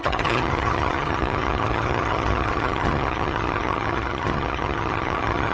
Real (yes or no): no